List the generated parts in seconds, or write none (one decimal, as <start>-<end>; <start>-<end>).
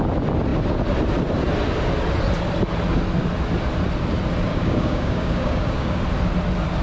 4.5-6.0